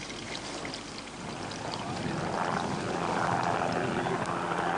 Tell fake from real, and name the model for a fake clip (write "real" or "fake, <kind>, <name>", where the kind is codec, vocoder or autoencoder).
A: real